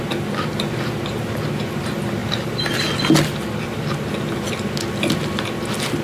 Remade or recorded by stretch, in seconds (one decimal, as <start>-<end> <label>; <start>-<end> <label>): 0.0-6.0 recorded